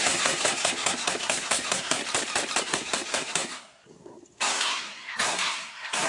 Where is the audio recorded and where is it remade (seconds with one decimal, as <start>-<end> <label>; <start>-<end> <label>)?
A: 0.0-2.0 remade; 2.0-2.6 recorded; 2.6-6.1 remade